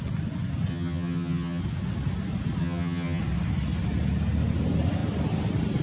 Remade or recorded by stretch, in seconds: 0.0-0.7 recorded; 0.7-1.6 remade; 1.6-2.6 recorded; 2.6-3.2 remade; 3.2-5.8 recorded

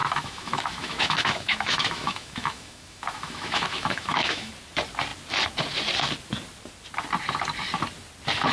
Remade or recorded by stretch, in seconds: 0.0-4.5 remade; 4.5-8.5 recorded

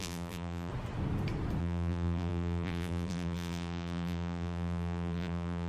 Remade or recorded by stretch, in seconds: 0.0-0.7 remade; 0.7-1.6 recorded; 1.6-5.7 remade

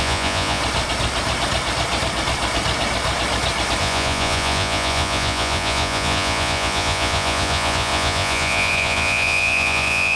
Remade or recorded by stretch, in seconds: 0.0-0.6 remade; 0.6-3.8 recorded; 3.8-10.2 remade

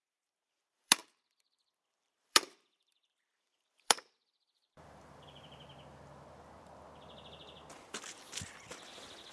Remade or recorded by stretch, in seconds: 0.0-5.7 remade; 5.7-9.3 recorded

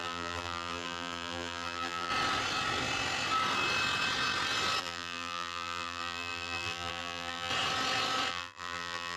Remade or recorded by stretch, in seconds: 0.0-2.1 remade; 2.1-4.8 recorded; 4.8-7.5 remade; 7.5-8.3 recorded; 8.3-9.2 remade